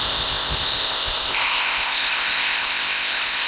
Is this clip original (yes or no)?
no